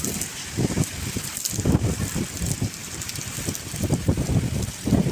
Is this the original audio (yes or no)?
yes